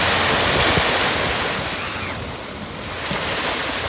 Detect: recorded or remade recorded